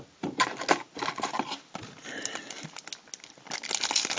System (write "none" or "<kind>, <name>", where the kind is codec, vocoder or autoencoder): none